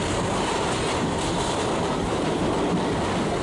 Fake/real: real